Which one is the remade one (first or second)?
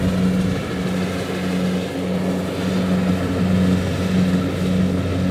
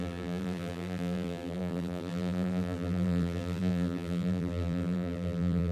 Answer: second